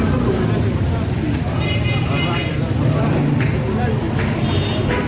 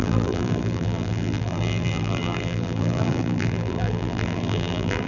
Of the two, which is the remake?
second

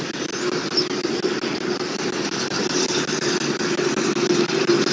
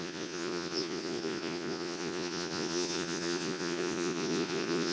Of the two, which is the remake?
second